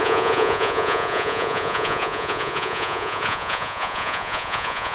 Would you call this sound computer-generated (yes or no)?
yes